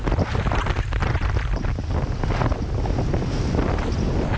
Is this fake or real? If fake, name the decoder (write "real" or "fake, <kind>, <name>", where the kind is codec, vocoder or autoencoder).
real